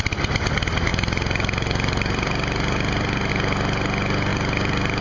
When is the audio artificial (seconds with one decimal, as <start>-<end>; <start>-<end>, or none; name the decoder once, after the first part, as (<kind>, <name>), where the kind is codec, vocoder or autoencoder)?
0.9-3.3 (vocoder, BigVGAN v2); 4.3-5.0